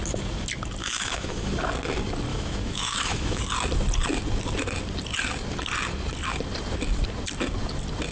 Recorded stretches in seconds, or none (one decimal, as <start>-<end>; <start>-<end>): 0.0-0.8; 1.5-2.3; 3.4-8.1